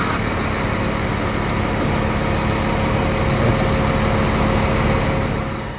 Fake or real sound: real